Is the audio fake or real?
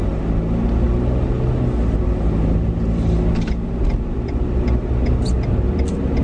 real